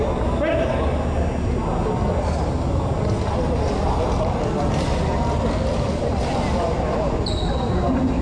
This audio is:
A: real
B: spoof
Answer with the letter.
A